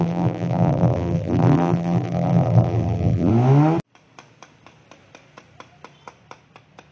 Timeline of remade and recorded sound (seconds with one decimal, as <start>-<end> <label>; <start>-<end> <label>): 0.0-3.3 remade; 3.3-6.9 recorded